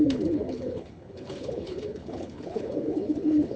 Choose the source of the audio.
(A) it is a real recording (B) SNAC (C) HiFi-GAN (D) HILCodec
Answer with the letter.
D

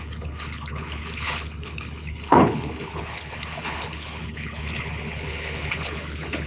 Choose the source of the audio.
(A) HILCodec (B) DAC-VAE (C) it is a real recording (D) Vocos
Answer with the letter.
A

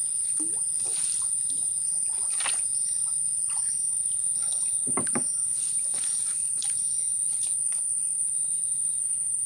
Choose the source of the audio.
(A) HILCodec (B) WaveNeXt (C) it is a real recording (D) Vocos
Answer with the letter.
C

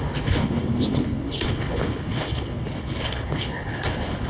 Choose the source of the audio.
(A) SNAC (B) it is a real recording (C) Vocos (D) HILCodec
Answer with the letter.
D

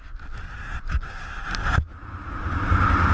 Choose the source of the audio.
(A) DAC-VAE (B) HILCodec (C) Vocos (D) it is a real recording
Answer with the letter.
D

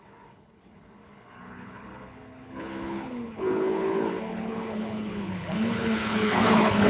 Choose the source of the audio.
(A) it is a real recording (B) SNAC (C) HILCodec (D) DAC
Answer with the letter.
C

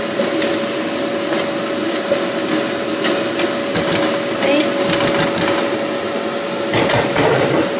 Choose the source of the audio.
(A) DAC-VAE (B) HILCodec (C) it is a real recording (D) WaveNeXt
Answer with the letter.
C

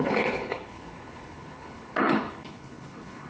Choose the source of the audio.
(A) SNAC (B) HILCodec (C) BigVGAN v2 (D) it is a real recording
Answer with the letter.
B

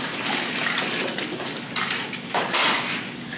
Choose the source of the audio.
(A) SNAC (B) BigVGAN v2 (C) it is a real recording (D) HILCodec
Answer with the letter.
C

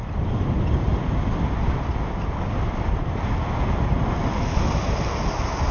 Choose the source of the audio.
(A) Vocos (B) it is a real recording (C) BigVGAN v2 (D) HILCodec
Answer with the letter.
B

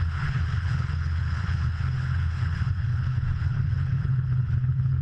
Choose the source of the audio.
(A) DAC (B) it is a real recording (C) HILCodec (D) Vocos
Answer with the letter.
C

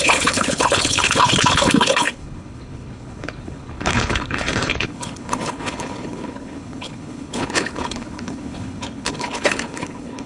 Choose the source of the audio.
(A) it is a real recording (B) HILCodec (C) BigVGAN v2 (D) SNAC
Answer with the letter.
B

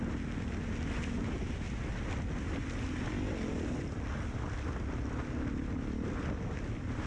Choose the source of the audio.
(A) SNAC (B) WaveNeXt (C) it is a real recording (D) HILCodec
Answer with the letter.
C